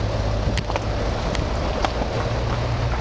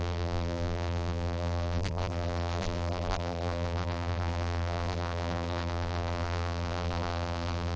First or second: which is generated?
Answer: second